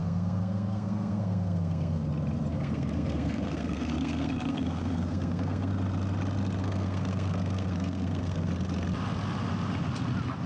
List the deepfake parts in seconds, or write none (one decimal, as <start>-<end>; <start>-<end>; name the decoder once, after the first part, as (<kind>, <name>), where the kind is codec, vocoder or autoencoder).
0.0-2.1 (codec, SNAC); 2.5-5.7; 6.6-8.5